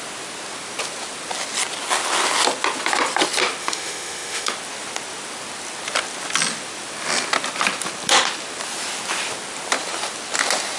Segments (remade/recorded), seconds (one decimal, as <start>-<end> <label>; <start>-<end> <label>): 0.0-3.6 recorded; 3.6-4.5 remade; 4.5-10.8 recorded